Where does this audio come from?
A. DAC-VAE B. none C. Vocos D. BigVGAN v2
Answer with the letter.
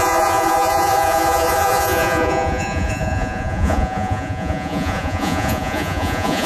C